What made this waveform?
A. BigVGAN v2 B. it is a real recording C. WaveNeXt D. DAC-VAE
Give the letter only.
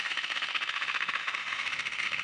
D